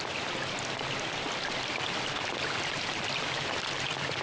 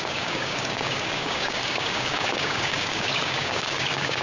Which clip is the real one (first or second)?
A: first